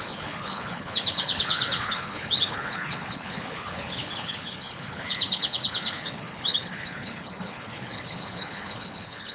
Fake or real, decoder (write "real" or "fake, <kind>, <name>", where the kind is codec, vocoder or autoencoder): fake, codec, HILCodec